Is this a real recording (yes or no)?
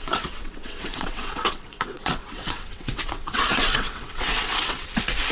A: no